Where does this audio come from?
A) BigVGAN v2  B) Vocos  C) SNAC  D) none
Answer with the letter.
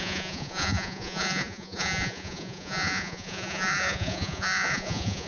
B